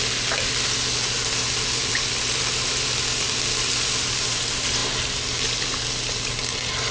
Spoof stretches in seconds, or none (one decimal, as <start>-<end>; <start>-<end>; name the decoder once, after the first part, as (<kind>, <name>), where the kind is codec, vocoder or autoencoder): none